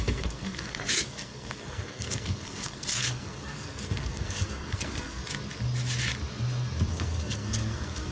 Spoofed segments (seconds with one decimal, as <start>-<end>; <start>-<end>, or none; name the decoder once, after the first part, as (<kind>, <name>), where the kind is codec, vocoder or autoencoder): 0.0-5.2 (codec, SNAC); 6.9-8.1